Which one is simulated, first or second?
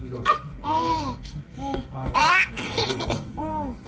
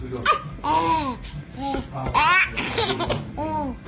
first